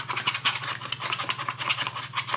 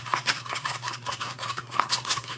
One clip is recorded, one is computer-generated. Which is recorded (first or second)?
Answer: first